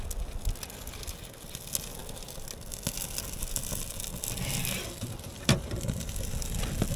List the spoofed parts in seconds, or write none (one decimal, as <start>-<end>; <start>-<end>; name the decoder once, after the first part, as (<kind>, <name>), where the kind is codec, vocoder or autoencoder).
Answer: 5.3-6.1 (vocoder, BigVGAN v2)